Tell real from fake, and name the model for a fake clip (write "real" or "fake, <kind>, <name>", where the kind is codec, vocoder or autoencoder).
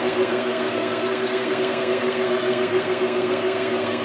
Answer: fake, codec, SNAC